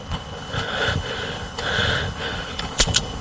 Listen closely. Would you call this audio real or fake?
fake